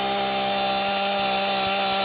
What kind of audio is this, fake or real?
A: real